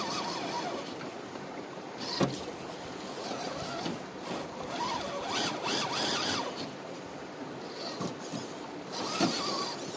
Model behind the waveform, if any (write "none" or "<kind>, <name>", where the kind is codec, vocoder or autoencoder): none